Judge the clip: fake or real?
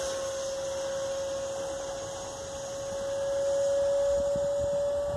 real